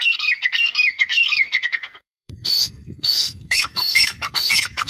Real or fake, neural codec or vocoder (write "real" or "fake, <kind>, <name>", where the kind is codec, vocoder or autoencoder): fake, codec, SNAC